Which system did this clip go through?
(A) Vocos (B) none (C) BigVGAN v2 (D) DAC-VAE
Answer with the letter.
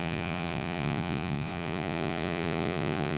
A